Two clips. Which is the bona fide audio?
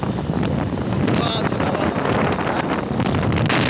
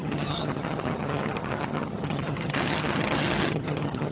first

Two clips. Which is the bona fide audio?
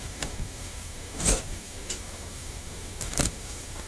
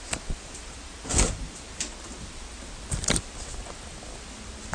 second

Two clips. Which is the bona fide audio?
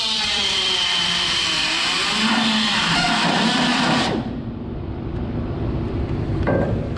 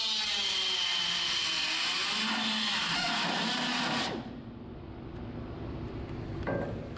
second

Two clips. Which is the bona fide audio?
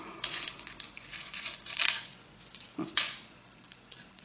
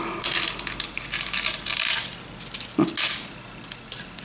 second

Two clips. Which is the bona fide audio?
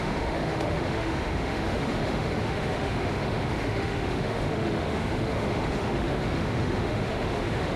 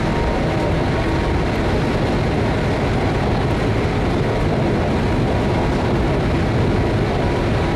second